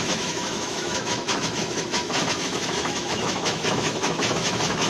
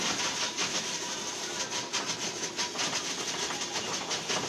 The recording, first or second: second